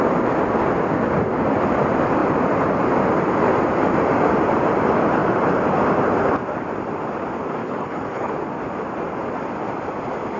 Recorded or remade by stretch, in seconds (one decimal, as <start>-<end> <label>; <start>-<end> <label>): 0.0-7.6 recorded; 7.6-8.3 remade; 8.3-10.4 recorded